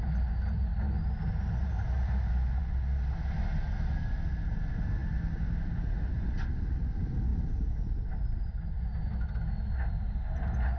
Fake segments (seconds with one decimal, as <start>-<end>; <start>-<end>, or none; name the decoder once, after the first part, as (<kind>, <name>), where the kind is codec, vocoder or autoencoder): none